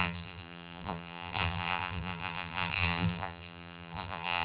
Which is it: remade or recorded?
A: remade